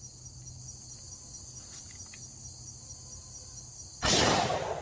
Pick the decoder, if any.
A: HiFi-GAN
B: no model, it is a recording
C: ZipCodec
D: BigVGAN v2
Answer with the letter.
B